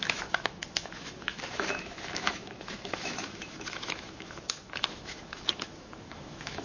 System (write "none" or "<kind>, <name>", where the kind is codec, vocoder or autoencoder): autoencoder, DAC-VAE